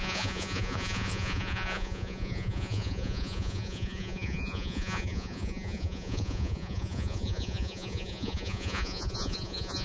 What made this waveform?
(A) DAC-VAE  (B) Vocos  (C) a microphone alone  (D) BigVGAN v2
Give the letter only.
B